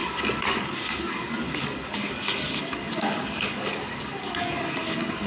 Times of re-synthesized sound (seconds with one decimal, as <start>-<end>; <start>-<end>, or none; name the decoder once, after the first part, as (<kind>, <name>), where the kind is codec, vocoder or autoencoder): 0.0-5.3 (codec, DAC)